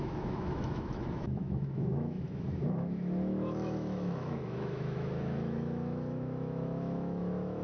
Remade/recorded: remade